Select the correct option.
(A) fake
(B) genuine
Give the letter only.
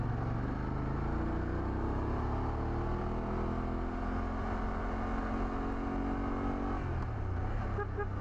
B